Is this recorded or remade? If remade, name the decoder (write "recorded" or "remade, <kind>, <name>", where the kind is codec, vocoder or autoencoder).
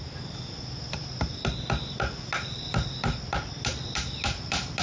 recorded